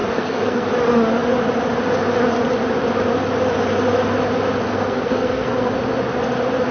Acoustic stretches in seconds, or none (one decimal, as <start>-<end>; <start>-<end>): 0.7-4.7; 5.7-6.7